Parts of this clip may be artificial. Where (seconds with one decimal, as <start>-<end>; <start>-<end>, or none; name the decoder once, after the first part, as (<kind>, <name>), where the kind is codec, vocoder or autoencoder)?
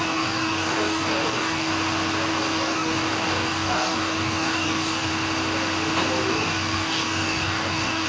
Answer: 0.0-1.7 (codec, DAC); 2.3-5.1; 6.3-8.1